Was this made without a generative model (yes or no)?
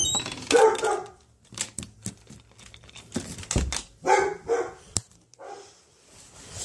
yes